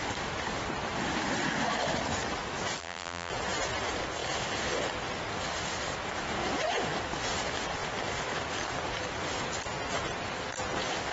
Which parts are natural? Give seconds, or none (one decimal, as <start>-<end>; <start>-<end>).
0.0-2.8; 3.3-11.1